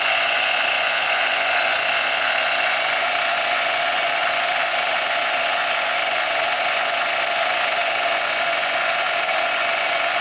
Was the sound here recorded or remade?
remade